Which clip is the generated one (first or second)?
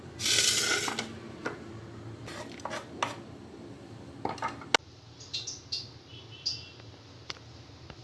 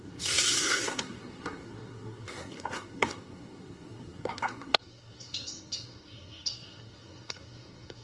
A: second